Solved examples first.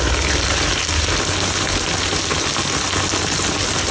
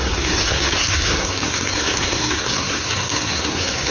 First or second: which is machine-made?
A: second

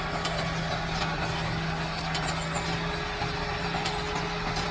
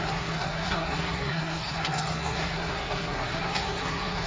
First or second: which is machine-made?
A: second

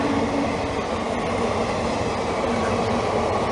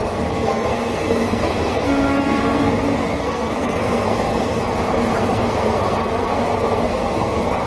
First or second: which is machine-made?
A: second